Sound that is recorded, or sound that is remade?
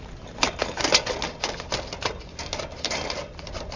recorded